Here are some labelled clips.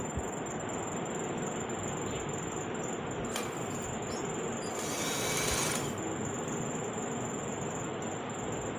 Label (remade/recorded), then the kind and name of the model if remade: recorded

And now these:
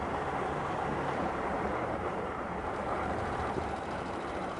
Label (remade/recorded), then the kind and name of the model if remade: remade, vocoder, BigVGAN v2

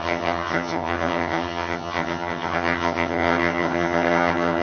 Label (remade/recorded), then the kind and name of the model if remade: remade, vocoder, HiFi-GAN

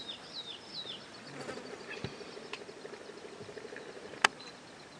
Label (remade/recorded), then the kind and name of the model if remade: recorded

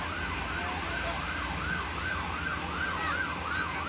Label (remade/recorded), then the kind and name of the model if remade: recorded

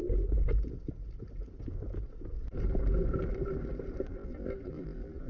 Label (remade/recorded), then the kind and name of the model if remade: remade, vocoder, BigVGAN v2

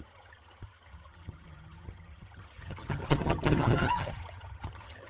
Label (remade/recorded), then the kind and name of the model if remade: remade, vocoder, HiFi-GAN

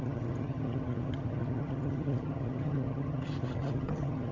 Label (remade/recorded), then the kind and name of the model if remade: remade, vocoder, HiFi-GAN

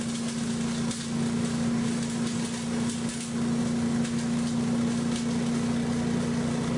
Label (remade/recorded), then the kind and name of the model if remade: recorded